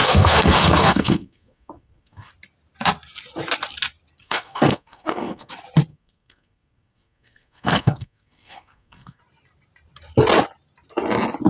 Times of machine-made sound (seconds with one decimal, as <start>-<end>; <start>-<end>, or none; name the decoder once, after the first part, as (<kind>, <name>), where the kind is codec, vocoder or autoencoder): 0.0-2.3 (codec, SNAC); 4.2-5.5; 5.9-9.2